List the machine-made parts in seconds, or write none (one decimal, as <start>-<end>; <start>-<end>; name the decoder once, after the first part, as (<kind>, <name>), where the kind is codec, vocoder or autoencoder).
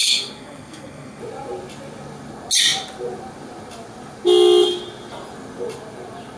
0.0-1.2 (codec, SNAC)